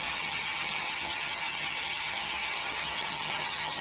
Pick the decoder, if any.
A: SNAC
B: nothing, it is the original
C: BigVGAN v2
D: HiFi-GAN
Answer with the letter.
D